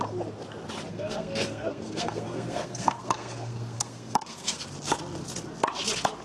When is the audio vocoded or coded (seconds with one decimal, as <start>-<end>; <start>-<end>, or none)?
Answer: 0.9-4.6